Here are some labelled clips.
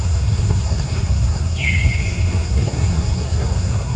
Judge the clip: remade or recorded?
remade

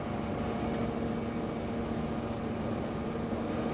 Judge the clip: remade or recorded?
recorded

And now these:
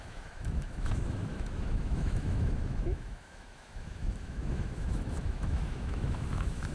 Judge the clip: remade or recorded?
remade